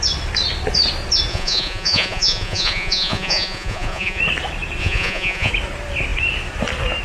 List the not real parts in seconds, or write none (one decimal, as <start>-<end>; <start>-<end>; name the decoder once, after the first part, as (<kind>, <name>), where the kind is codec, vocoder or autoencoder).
1.3-4.2 (vocoder, Vocos); 4.8-5.5